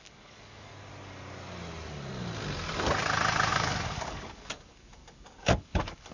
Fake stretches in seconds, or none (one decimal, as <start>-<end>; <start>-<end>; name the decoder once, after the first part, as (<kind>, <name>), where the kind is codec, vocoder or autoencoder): 0.0-0.7 (codec, DAC); 3.5-6.1